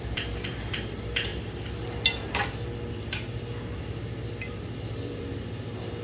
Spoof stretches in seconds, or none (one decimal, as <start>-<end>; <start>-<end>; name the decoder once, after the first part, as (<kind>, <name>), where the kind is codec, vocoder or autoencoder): 0.0-1.3 (vocoder, BigVGAN v2); 4.7-6.0